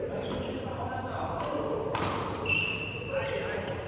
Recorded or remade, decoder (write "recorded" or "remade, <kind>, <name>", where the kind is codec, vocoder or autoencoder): remade, vocoder, BigVGAN v2